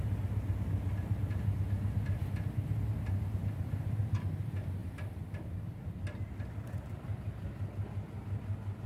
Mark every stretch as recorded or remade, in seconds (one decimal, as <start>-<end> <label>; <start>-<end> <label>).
0.0-4.8 recorded; 4.8-7.3 remade; 7.3-8.9 recorded